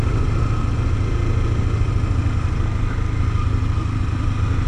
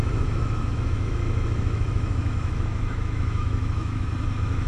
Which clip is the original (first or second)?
first